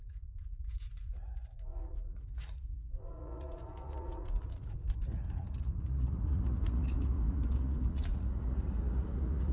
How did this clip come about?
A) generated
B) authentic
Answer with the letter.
A